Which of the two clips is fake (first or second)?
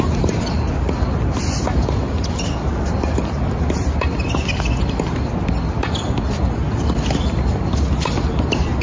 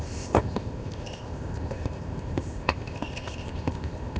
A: second